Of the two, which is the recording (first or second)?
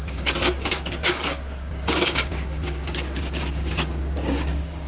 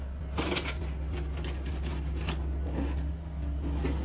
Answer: second